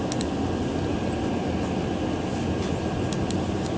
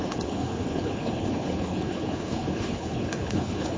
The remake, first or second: second